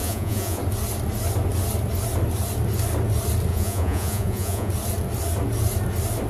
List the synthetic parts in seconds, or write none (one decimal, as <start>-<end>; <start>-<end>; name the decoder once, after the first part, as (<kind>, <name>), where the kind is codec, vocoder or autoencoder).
0.0-0.6 (vocoder, Vocos); 3.5-4.7